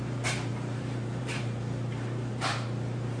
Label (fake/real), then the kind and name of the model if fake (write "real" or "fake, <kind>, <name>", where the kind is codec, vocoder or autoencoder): fake, vocoder, BigVGAN v2